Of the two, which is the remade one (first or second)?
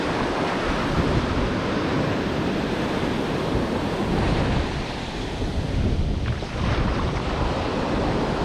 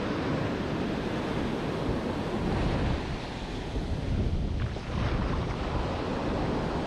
first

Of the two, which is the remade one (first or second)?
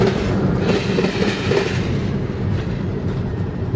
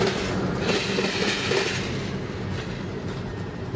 first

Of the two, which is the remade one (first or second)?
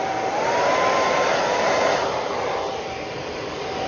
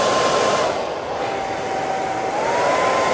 first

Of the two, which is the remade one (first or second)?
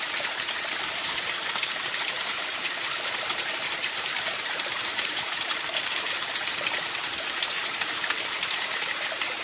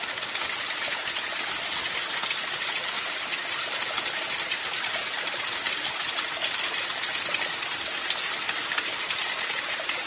first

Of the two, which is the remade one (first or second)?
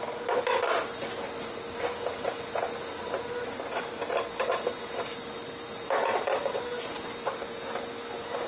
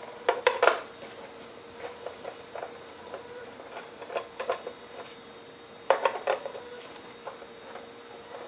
second